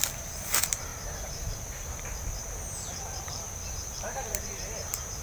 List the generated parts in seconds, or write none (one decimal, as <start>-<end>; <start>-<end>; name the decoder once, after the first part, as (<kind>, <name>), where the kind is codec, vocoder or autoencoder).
0.0-5.2 (vocoder, BigVGAN v2)